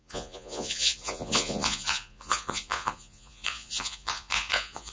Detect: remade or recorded remade